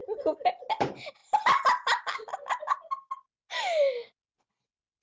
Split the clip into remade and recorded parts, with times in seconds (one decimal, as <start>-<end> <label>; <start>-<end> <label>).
0.0-0.5 remade; 0.5-5.0 recorded